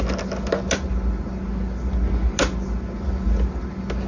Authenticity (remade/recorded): recorded